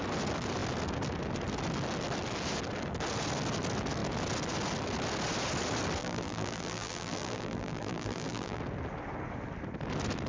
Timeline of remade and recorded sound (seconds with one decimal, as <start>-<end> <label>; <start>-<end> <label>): 0.0-6.0 recorded; 6.0-8.6 remade; 8.6-10.3 recorded